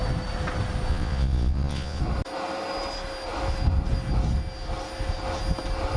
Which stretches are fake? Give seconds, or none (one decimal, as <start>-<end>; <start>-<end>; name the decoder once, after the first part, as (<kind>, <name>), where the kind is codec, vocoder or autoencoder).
0.9-2.0 (vocoder, Vocos)